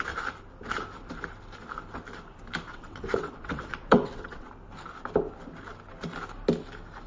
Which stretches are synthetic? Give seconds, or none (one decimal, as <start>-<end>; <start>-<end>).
2.7-4.5